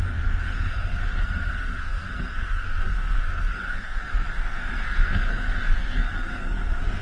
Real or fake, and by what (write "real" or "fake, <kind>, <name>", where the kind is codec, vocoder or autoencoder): fake, codec, SNAC